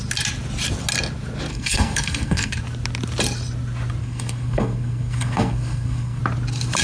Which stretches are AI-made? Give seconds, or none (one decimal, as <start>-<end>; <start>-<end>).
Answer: 1.5-2.6; 4.0-6.2